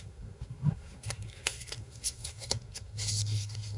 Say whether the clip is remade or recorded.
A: remade